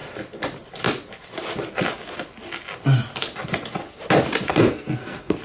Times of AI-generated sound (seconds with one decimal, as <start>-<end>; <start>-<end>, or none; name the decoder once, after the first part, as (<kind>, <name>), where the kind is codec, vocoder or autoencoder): 4.5-5.4 (codec, SNAC)